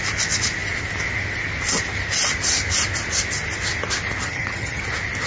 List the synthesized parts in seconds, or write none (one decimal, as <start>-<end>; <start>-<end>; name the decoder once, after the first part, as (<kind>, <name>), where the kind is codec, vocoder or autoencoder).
4.2-4.8 (vocoder, HiFi-GAN)